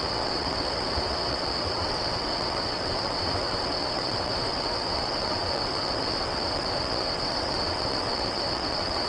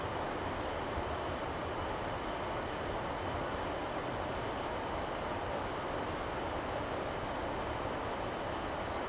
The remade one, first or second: first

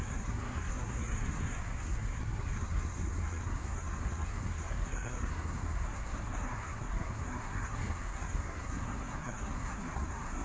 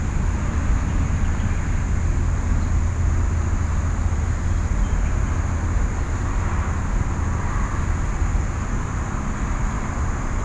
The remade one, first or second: first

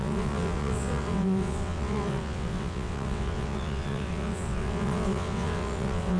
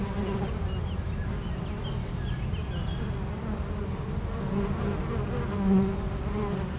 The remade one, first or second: first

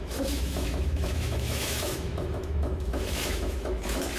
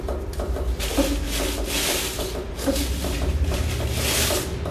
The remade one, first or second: first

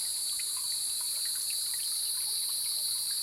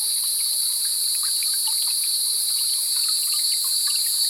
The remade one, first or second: second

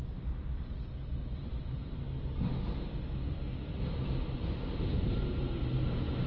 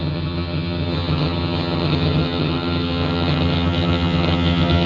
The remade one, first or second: second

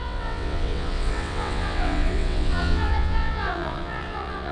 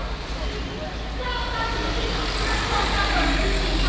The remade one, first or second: first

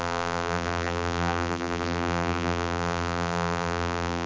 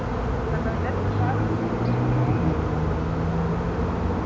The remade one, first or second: first